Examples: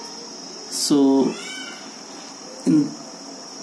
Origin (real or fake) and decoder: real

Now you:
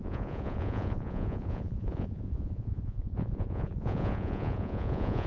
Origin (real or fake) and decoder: fake, vocoder, Vocos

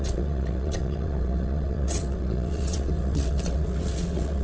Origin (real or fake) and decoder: fake, vocoder, WaveNeXt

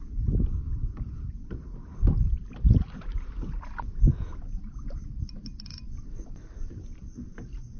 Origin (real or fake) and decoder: fake, vocoder, BigVGAN v2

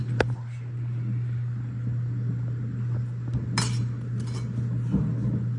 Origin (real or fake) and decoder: real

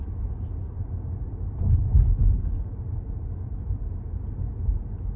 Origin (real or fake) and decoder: real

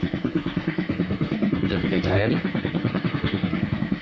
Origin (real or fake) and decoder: fake, codec, SNAC